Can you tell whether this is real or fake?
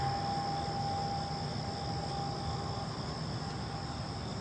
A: real